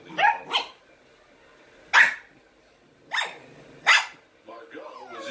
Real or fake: real